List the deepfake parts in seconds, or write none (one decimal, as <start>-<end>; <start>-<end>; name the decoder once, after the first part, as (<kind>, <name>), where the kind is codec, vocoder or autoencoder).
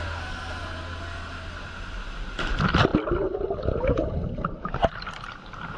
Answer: none